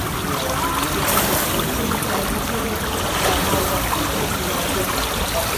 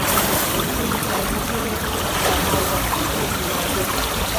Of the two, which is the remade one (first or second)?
second